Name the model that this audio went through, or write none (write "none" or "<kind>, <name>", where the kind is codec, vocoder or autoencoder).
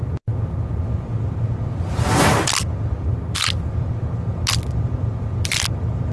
none